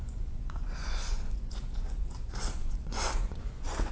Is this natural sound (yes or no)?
no